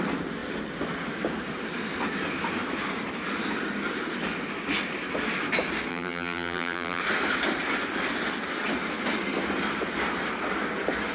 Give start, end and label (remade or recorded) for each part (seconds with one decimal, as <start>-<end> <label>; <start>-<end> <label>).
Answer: 0.0-5.9 recorded; 5.9-7.0 remade; 7.0-11.1 recorded